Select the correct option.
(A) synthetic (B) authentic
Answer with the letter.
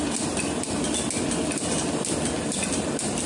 B